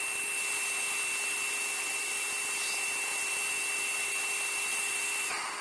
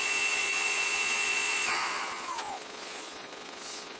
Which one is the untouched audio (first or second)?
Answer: first